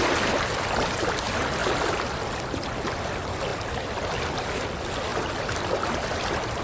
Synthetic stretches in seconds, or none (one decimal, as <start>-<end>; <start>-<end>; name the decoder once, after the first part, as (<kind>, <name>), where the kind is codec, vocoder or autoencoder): none